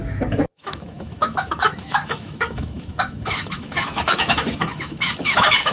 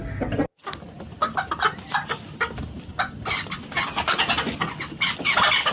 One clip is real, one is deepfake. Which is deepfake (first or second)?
first